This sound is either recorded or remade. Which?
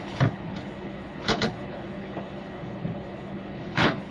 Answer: remade